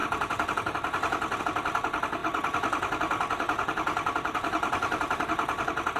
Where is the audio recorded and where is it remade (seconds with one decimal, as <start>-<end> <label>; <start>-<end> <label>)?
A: 0.0-1.4 remade; 1.4-2.2 recorded; 2.2-6.0 remade